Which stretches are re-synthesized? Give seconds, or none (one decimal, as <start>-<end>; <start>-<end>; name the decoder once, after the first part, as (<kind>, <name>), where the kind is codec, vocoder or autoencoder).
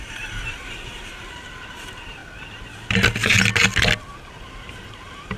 0.0-2.2 (vocoder, BigVGAN v2); 4.1-5.4